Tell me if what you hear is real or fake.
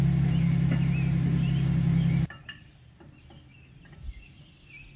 real